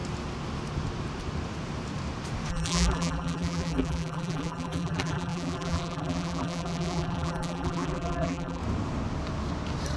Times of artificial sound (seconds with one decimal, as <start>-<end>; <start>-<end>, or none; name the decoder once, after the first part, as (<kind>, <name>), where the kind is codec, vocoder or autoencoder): 2.5-8.6 (vocoder, BigVGAN v2)